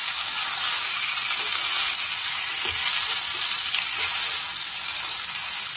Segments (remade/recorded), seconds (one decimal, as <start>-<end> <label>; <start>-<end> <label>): 0.0-0.9 remade; 0.9-5.8 recorded